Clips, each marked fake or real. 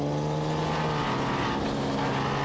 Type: real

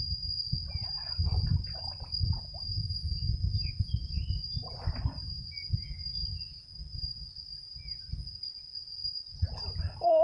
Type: real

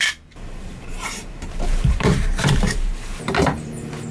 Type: fake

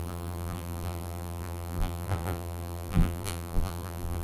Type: fake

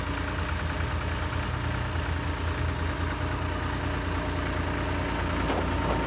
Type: real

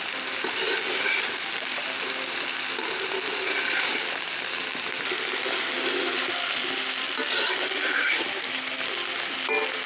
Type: real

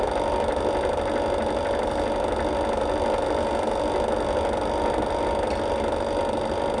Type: real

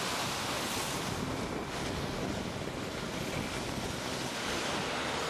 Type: real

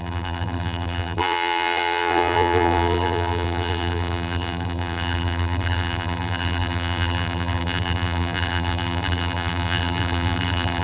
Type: fake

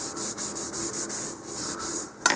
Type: real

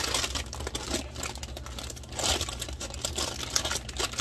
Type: real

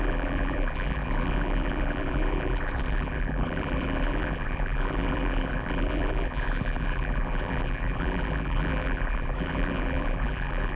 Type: fake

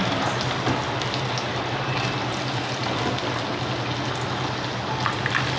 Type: real